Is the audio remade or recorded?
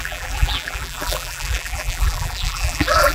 remade